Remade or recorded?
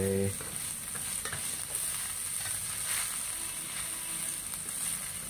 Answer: recorded